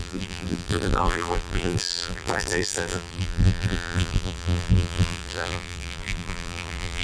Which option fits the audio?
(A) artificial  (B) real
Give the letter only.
A